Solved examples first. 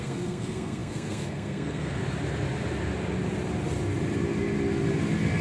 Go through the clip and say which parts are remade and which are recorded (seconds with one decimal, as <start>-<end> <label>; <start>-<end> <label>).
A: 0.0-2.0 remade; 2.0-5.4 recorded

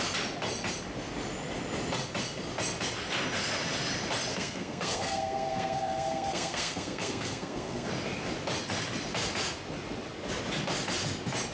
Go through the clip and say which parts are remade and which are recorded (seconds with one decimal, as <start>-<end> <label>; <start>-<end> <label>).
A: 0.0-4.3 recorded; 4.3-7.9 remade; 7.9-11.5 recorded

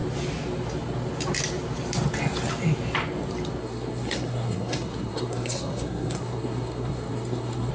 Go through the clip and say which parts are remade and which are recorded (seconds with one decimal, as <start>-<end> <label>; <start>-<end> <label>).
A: 0.0-3.6 recorded; 3.6-7.7 remade